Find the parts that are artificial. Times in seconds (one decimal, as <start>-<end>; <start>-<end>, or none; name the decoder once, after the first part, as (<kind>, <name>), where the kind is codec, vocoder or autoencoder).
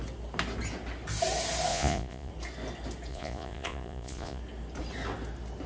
1.7-2.3 (vocoder, Vocos); 3.1-4.4